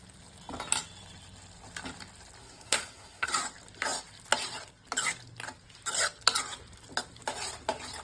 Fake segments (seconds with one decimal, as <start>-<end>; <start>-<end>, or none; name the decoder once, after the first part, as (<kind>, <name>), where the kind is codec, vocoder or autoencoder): 2.4-3.3 (codec, SNAC)